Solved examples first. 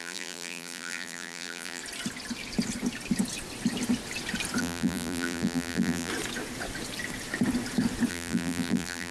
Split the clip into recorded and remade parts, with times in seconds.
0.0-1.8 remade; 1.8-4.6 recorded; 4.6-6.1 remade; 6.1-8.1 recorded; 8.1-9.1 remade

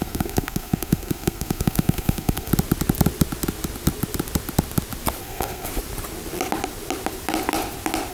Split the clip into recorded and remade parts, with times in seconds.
0.0-2.5 remade; 2.5-5.2 recorded; 5.2-5.7 remade; 5.7-8.1 recorded

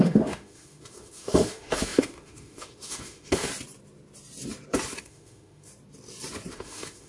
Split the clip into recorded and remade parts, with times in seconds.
0.0-3.5 remade; 3.5-5.0 recorded; 5.0-5.7 remade; 5.7-6.5 recorded; 6.5-7.1 remade

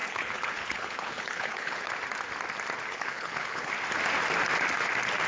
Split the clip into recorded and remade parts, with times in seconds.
0.0-1.9 remade; 1.9-2.9 recorded; 2.9-3.7 remade; 3.7-5.3 recorded

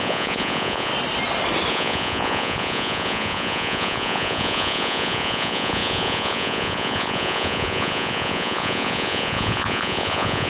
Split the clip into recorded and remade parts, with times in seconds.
0.0-0.9 remade; 0.9-1.7 recorded; 1.7-10.5 remade

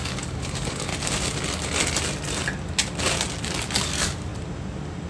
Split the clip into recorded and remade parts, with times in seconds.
0.0-0.9 remade; 0.9-3.8 recorded; 3.8-4.3 remade; 4.3-5.1 recorded